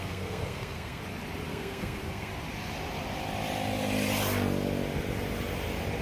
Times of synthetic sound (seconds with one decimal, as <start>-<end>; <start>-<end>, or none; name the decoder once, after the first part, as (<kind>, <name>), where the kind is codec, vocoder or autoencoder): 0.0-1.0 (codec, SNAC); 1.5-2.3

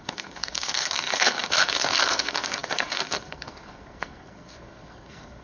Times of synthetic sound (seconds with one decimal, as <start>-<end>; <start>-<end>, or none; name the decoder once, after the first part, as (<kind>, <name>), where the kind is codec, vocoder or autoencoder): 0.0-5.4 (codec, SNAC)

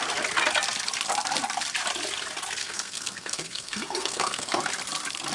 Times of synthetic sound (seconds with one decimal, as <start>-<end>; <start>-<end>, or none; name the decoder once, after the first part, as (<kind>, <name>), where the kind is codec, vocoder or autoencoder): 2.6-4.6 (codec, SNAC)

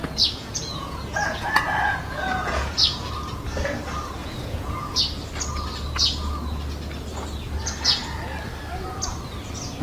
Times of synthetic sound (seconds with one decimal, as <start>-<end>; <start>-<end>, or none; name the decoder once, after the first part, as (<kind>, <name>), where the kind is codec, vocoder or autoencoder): 0.0-3.1 (vocoder, Vocos); 4.2-5.0

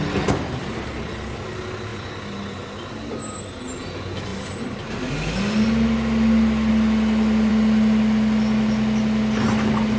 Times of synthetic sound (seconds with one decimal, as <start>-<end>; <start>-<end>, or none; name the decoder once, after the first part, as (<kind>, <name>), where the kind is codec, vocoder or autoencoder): none

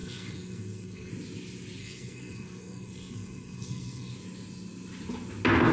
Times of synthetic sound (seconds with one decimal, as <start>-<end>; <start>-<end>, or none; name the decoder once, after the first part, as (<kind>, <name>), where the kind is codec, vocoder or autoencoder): 0.0-1.1 (codec, SNAC); 1.8-4.1